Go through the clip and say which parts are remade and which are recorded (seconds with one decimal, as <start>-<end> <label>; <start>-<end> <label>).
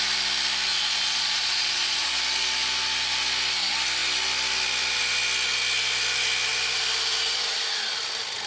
0.0-0.7 recorded; 0.7-2.1 remade; 2.1-8.5 recorded